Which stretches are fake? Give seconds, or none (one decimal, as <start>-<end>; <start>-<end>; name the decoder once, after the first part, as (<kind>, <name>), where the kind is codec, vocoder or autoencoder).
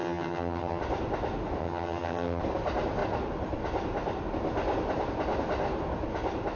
0.0-0.8 (vocoder, HiFi-GAN); 1.6-2.4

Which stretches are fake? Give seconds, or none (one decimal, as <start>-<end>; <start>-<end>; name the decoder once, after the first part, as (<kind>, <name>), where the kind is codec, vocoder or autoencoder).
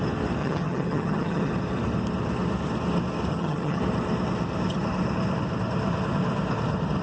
0.4-1.5 (vocoder, HiFi-GAN); 3.3-3.8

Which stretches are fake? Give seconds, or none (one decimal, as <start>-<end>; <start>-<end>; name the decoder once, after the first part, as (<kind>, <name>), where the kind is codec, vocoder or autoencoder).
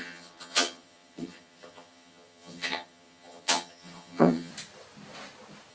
0.0-4.5 (vocoder, HiFi-GAN)